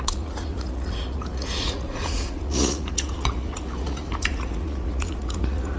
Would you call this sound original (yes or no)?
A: no